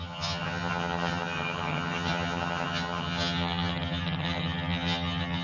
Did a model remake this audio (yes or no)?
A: yes